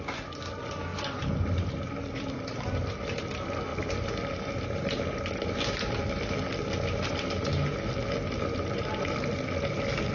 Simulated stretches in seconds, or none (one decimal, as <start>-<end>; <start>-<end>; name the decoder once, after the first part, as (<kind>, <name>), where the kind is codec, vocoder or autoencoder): 0.9-3.2 (vocoder, BigVGAN v2); 3.7-4.4